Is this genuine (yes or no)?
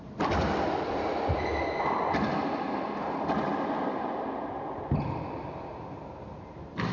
yes